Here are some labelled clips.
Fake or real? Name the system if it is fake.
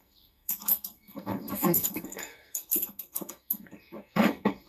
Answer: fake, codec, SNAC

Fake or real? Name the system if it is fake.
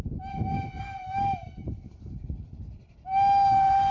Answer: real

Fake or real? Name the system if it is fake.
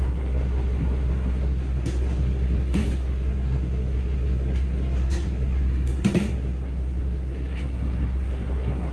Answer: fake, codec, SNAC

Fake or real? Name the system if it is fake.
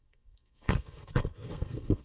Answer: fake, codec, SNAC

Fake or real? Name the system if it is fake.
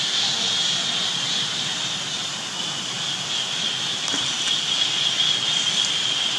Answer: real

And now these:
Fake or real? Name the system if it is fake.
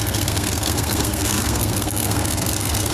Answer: fake, codec, SNAC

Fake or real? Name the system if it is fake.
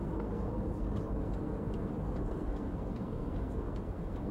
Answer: fake, codec, SNAC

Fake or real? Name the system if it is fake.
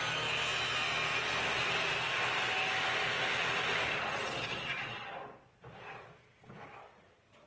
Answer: real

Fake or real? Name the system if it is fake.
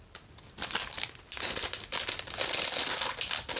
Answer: real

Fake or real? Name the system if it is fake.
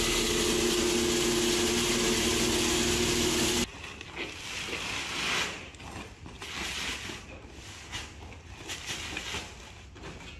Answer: real